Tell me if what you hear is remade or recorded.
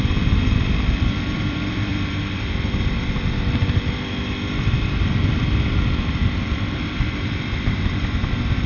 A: remade